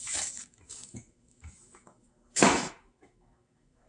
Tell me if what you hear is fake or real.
fake